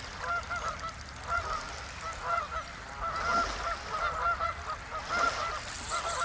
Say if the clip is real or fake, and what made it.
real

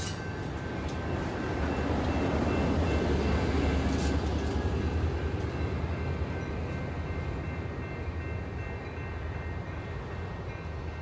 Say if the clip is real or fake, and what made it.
real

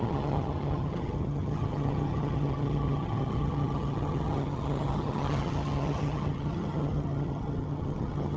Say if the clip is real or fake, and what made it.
fake, vocoder, HiFi-GAN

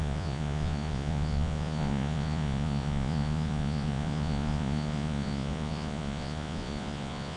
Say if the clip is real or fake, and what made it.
fake, vocoder, Vocos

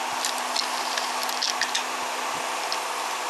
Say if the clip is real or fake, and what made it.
real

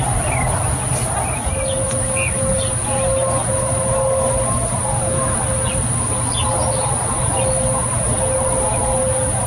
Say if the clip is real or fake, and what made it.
real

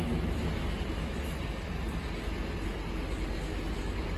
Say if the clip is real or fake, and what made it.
real